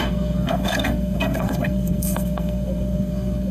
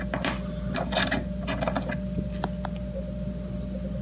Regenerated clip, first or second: first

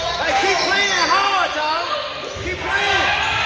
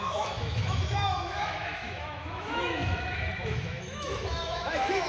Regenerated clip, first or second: second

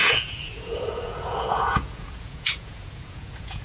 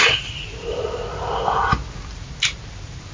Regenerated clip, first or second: first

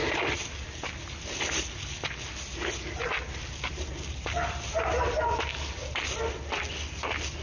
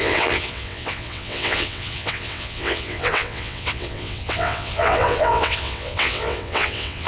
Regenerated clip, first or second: second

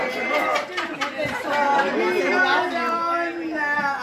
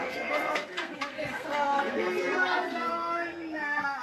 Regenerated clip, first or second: second